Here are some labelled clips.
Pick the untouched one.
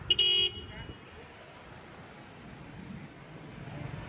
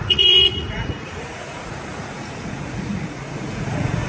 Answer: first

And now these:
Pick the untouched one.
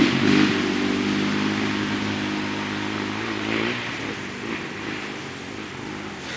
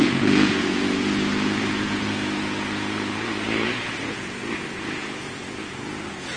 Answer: first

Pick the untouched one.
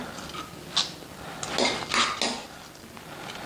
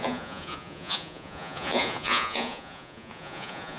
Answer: first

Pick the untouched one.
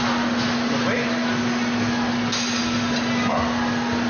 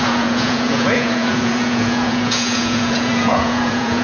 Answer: first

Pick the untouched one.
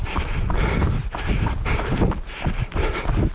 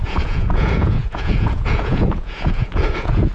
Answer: first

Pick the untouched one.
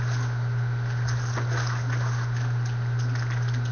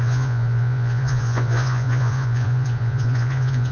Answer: first